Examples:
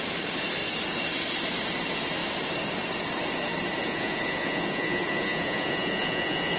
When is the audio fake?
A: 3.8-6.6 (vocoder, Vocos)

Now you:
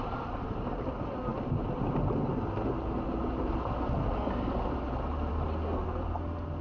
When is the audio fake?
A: none

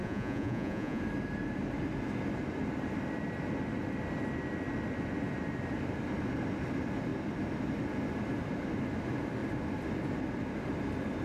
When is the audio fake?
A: 0.0-1.0 (vocoder, Vocos)

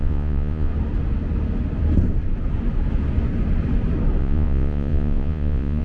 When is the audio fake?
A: 0.0-0.7 (vocoder, Vocos); 4.2-5.8

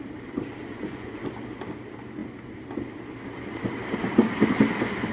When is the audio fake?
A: 0.6-1.3 (vocoder, Vocos)

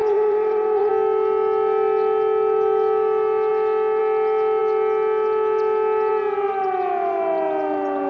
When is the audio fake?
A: 0.0-0.9 (vocoder, Vocos)